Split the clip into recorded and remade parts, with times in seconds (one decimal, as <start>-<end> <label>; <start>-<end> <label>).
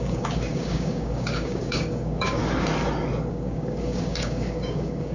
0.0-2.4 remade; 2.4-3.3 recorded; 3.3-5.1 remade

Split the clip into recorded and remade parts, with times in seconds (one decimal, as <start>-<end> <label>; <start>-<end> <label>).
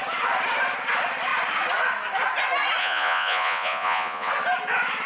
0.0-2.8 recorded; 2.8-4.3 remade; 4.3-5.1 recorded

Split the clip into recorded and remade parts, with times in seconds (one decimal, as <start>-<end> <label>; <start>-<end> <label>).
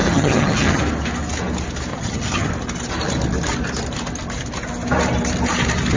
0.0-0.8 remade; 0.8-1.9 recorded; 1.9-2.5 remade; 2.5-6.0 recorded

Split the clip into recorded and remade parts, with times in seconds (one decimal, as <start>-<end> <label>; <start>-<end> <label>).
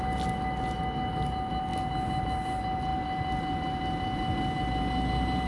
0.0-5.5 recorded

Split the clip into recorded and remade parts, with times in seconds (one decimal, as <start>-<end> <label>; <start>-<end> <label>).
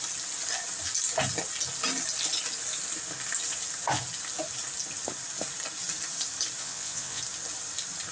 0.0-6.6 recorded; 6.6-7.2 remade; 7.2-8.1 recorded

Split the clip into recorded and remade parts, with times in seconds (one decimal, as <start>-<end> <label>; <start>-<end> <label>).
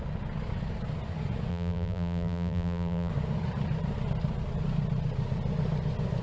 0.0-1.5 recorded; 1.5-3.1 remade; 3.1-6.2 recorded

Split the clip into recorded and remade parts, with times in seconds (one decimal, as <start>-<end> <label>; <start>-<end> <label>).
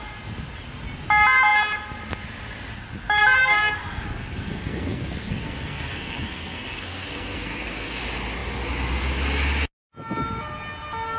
0.0-3.4 recorded; 3.4-8.0 remade; 8.0-11.2 recorded